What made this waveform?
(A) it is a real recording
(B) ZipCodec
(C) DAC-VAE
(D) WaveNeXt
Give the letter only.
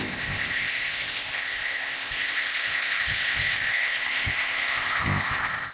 B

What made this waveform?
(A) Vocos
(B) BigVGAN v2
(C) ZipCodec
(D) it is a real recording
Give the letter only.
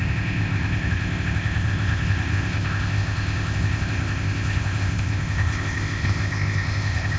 C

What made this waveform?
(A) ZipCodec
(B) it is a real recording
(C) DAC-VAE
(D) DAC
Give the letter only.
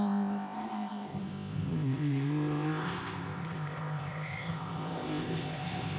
A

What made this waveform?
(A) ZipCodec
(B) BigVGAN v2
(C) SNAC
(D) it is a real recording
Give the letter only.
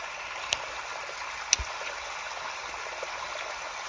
D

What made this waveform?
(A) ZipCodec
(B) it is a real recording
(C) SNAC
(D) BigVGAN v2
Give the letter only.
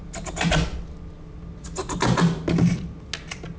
B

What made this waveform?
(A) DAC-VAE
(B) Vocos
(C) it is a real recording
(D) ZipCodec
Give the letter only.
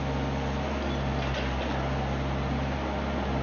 C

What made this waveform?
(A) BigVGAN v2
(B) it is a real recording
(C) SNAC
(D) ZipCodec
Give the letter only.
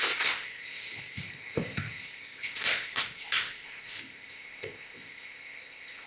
D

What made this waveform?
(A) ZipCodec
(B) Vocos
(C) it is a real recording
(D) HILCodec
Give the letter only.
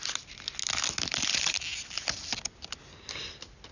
C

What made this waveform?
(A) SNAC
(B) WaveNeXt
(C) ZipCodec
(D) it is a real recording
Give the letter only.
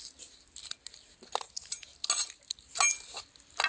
D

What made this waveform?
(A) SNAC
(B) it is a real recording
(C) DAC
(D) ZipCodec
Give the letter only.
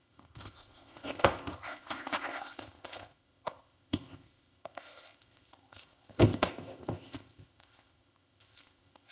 D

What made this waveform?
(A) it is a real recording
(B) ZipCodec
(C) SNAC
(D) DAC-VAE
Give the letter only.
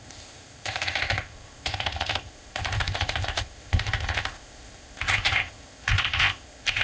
B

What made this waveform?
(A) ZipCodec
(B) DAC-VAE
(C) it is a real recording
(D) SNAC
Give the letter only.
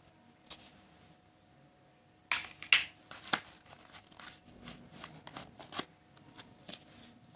C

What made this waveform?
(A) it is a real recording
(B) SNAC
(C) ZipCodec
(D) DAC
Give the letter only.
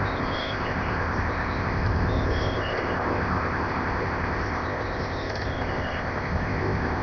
C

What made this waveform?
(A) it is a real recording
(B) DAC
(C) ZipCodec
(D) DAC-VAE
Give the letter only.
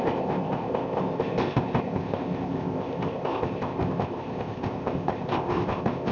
C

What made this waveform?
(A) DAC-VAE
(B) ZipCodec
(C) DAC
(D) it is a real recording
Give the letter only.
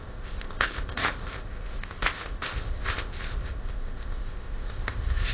B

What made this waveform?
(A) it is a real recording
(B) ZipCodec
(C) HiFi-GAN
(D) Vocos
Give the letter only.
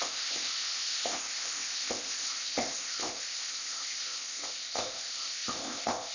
B